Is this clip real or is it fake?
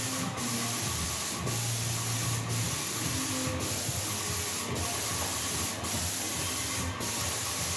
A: real